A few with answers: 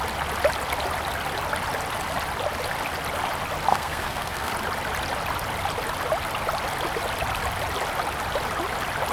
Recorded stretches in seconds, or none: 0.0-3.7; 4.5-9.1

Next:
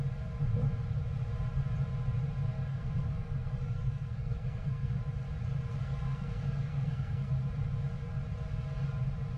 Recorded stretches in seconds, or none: 0.0-2.7; 5.0-5.7; 7.3-9.4

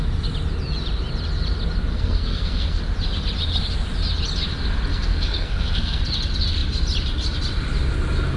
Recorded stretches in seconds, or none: 0.0-1.9; 2.8-4.9; 6.0-8.4

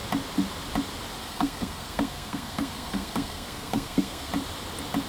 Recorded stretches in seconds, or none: 0.0-1.2; 4.3-5.1